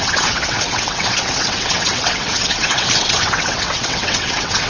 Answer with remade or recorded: remade